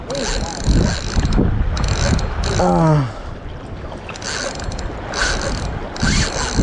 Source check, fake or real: real